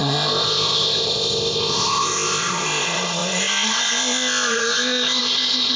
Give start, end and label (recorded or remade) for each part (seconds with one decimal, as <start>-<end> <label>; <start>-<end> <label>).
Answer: 0.0-5.8 remade